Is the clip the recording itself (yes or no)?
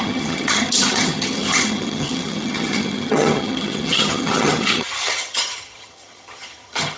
no